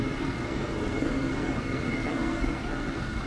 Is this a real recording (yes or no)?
no